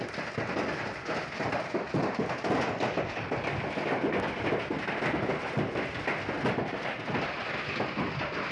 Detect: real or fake real